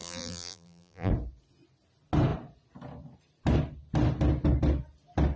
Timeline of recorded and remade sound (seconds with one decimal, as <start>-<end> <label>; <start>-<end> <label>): 0.0-1.1 remade; 1.1-5.4 recorded